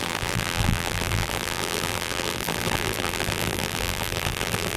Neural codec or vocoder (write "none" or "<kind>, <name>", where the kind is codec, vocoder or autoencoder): vocoder, BigVGAN v2